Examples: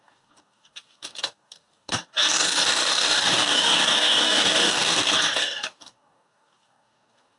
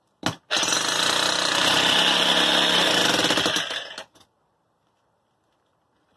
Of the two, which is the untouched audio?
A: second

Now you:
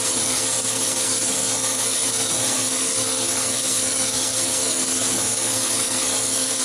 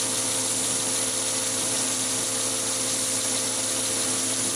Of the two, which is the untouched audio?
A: second